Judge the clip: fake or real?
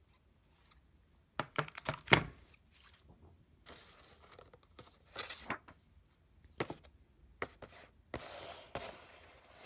real